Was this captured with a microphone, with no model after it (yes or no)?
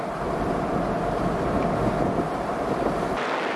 yes